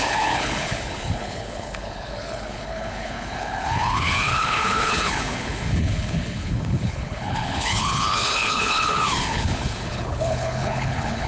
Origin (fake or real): fake